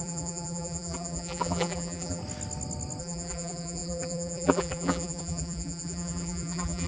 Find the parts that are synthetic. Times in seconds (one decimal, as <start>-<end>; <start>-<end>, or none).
0.0-2.2; 3.0-6.9